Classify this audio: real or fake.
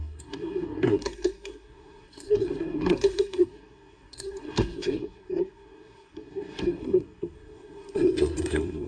fake